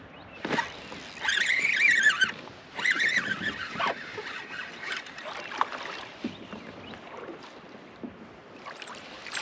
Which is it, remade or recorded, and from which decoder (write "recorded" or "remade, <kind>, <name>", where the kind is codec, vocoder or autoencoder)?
recorded